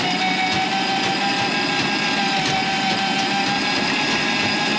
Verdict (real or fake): real